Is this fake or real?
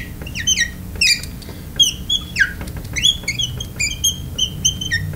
real